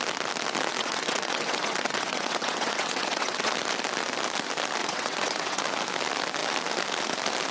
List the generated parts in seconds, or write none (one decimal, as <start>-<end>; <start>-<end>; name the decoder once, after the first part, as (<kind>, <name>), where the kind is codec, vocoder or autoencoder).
0.7-3.5 (vocoder, WaveNeXt); 4.8-5.6